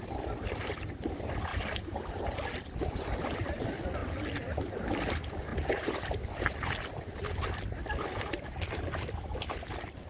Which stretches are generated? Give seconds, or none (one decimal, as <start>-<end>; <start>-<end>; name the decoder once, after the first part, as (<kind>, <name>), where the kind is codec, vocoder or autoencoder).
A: 0.0-4.0 (vocoder, BigVGAN v2); 5.1-10.1